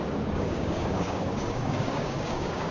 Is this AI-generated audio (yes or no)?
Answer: yes